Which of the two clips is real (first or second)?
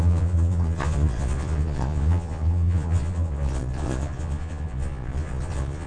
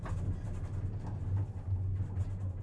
second